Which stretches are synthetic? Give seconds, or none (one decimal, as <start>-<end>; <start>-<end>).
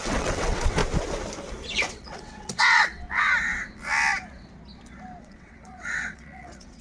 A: 0.0-0.8; 1.9-3.3; 5.2-6.8